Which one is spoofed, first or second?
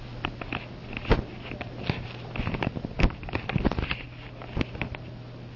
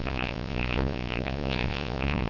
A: second